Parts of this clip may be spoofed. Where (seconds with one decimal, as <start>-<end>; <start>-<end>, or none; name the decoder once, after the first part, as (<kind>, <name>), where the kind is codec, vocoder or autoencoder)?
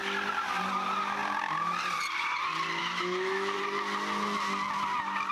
2.8-3.6 (autoencoder, DAC-VAE)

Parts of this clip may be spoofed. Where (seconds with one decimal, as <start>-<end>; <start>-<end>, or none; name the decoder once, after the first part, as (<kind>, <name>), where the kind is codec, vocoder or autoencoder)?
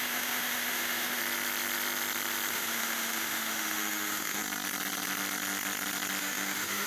0.0-1.2 (autoencoder, DAC-VAE); 2.5-4.4; 6.2-6.9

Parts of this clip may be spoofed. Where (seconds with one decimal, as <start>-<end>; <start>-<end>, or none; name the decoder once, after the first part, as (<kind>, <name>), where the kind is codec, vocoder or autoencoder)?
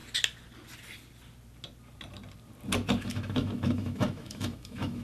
3.0-5.0 (autoencoder, DAC-VAE)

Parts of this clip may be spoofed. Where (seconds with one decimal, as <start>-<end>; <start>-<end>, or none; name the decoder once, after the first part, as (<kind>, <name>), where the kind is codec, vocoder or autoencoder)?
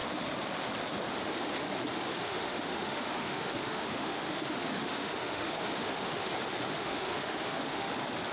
2.2-6.3 (autoencoder, DAC-VAE); 6.8-7.9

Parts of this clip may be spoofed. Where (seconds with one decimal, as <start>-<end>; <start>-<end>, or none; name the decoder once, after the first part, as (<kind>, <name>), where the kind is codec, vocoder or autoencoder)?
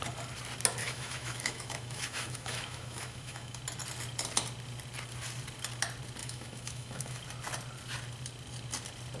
0.8-3.6 (autoencoder, DAC-VAE); 6.2-7.2